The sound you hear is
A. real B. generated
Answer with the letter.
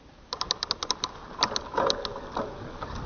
A